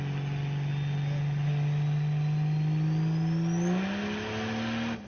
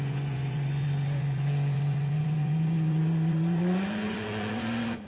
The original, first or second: first